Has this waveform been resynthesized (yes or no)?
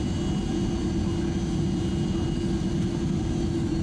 no